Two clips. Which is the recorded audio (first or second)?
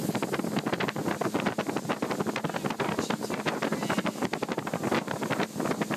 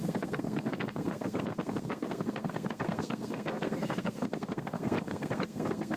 first